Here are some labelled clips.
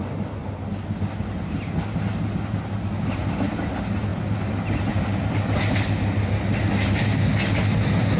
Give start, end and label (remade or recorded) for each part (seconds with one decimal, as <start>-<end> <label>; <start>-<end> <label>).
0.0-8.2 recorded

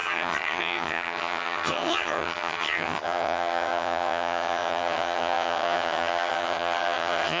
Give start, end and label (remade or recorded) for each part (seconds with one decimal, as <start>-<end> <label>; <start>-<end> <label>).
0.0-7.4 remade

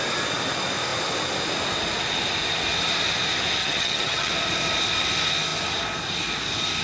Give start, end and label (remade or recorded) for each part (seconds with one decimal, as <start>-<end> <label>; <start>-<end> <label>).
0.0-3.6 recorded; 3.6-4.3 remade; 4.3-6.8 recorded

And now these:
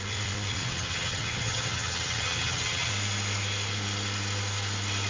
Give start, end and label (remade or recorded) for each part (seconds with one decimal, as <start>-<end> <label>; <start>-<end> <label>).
0.0-0.6 recorded; 0.6-2.9 remade; 2.9-5.1 recorded

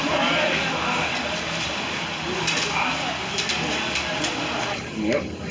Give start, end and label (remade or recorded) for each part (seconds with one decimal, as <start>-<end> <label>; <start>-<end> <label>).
0.0-5.5 recorded